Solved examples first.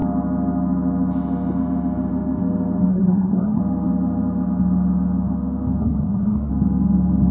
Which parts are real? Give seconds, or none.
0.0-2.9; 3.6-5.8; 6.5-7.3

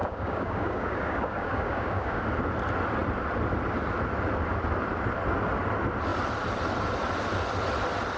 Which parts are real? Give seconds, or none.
2.2-8.2